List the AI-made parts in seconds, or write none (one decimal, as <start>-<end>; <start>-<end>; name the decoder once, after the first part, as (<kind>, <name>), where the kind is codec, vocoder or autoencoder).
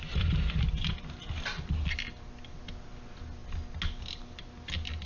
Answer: 0.0-0.9 (vocoder, BigVGAN v2)